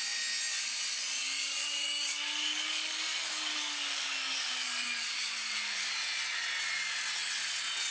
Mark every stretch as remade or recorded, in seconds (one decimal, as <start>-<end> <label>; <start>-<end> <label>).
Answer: 0.0-1.2 recorded; 1.2-5.9 remade; 5.9-7.9 recorded